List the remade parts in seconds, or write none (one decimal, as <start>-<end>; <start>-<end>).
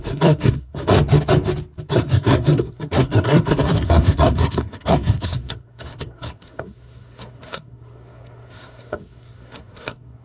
0.0-0.9; 1.9-10.2